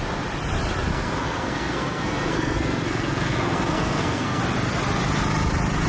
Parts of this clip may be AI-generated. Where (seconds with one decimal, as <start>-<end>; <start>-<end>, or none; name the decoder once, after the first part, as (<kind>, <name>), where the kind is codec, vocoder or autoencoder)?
0.9-4.4 (codec, SNAC)